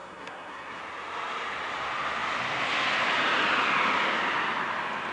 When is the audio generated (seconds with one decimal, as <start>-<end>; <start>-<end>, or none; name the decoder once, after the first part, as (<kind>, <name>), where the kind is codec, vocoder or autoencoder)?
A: 0.0-0.8 (codec, SNAC)